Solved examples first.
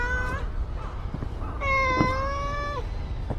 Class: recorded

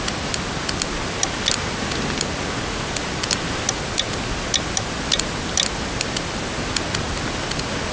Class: recorded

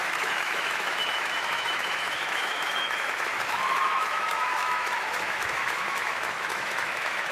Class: remade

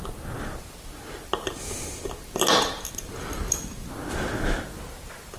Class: recorded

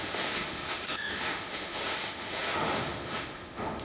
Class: remade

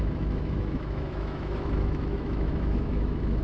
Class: remade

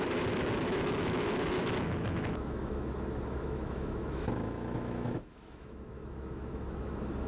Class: remade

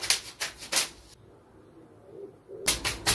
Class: recorded